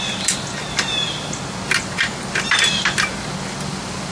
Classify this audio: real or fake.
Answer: real